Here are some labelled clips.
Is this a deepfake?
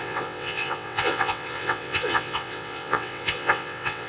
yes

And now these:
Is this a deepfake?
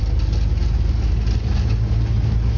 no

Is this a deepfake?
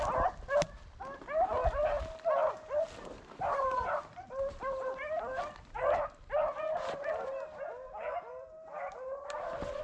no